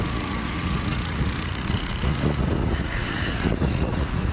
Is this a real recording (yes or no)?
no